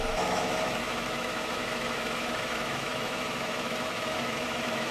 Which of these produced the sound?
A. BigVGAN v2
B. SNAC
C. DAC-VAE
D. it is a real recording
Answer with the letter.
C